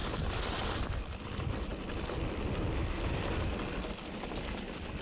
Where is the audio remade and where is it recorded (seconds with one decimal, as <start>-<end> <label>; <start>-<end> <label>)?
0.0-5.0 recorded